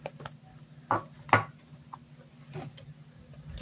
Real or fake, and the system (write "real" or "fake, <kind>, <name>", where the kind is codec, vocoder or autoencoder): real